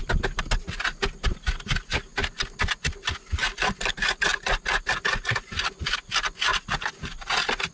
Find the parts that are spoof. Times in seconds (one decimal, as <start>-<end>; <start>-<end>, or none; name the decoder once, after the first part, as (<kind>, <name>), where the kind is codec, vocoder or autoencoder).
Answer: 3.4-3.9 (vocoder, BigVGAN v2)